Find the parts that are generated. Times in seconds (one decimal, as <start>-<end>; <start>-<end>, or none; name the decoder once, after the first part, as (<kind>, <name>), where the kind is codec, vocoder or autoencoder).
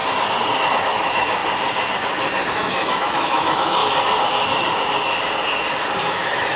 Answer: 0.7-1.4 (autoencoder, DAC-VAE); 2.5-3.8; 6.0-6.6